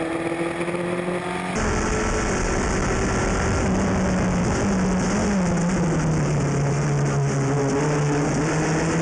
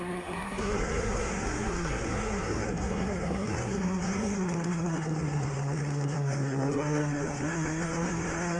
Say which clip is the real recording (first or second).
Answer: first